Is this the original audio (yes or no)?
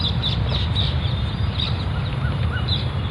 yes